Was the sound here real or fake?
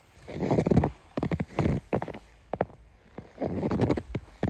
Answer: fake